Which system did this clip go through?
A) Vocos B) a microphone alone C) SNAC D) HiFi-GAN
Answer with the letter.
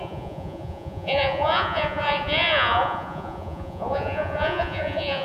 A